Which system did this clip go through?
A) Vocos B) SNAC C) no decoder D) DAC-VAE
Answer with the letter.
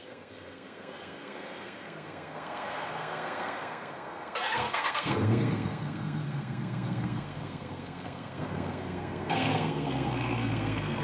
B